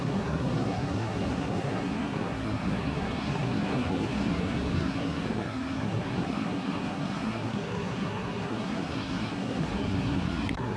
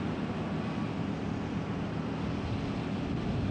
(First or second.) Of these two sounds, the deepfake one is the first